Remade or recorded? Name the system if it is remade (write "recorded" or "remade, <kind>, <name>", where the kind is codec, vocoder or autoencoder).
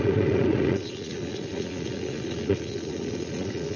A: remade, vocoder, Vocos